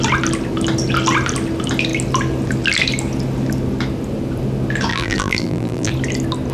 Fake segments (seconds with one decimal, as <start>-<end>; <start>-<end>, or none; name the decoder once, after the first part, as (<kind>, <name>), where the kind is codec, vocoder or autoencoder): 4.9-5.9 (vocoder, BigVGAN v2)